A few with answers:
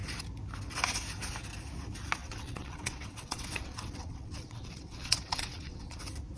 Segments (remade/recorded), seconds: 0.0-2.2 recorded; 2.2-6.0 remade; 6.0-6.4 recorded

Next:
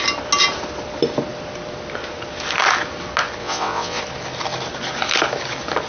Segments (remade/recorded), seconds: 0.0-3.4 recorded; 3.4-4.0 remade; 4.0-5.9 recorded

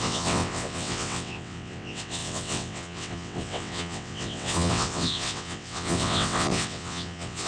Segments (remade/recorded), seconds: 0.0-7.5 remade

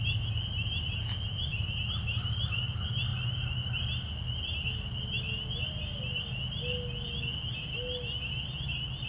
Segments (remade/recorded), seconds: 0.0-9.1 recorded

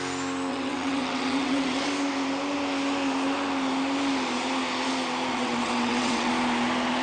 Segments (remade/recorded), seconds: 0.0-0.5 recorded; 0.5-1.9 remade; 1.9-5.3 recorded; 5.3-6.3 remade; 6.3-7.0 recorded

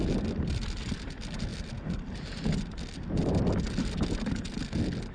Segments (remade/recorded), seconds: 0.0-5.1 recorded